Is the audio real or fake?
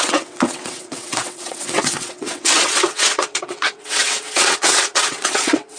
fake